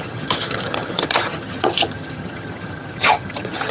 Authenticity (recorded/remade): remade